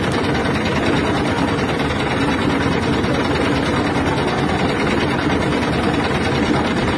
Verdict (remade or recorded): recorded